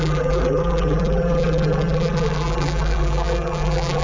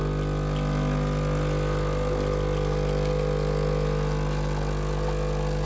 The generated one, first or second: first